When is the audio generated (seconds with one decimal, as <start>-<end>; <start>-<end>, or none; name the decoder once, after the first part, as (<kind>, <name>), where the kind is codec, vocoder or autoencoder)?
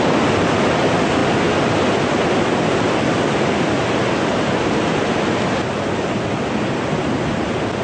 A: none